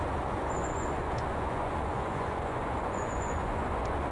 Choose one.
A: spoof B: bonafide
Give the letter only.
A